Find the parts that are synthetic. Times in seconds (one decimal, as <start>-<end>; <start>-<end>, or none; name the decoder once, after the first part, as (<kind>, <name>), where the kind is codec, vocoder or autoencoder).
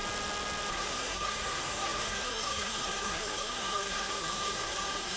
0.7-5.2 (codec, SNAC)